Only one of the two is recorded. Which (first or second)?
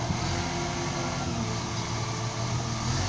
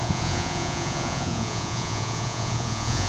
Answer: first